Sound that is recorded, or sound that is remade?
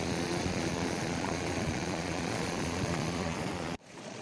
remade